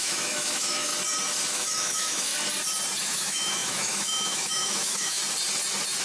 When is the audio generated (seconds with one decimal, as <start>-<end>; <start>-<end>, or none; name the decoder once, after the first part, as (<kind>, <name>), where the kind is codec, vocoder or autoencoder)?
0.0-0.9 (autoencoder, DAC-VAE); 1.5-2.3; 3.0-5.2

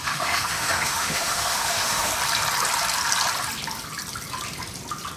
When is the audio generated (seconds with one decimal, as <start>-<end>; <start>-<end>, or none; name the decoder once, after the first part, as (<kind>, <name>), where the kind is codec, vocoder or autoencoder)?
0.0-2.1 (autoencoder, DAC-VAE)

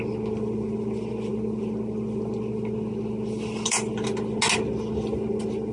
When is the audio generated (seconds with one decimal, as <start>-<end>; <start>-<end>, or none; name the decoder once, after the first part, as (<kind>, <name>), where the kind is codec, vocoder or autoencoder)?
none

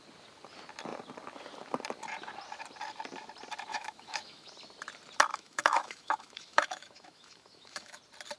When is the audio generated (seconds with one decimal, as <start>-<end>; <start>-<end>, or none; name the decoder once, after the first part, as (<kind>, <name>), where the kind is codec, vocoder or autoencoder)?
3.7-4.5 (autoencoder, DAC-VAE); 5.3-8.0

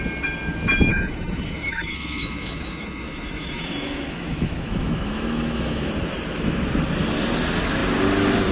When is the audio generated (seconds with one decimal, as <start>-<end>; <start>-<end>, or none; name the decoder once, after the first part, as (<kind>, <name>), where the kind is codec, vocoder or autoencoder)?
0.9-5.9 (autoencoder, DAC-VAE)